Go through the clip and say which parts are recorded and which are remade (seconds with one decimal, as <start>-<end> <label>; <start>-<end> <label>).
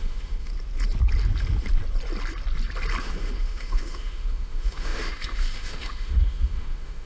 0.0-0.5 remade; 0.5-3.0 recorded; 3.0-7.1 remade